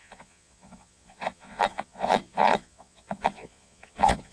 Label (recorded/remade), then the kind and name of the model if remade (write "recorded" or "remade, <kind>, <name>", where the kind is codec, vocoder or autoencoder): remade, vocoder, Vocos